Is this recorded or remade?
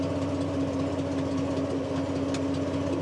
recorded